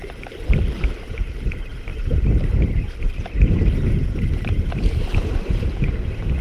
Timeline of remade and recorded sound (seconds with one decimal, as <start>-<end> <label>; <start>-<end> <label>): 0.0-1.9 recorded; 1.9-5.7 remade; 5.7-6.4 recorded